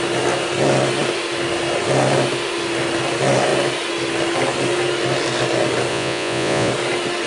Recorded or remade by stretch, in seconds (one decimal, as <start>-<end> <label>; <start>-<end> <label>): 0.0-5.9 recorded; 5.9-6.7 remade; 6.7-7.3 recorded